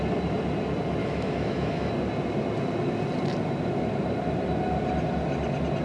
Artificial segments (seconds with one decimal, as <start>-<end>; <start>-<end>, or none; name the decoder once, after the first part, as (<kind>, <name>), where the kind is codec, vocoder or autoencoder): 1.0-1.9 (autoencoder, DAC-VAE)